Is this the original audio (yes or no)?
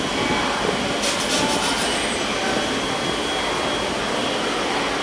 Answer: yes